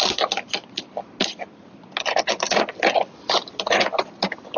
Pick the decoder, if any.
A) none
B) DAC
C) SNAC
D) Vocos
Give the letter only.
A